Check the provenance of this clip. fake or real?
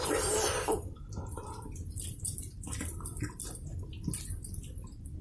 fake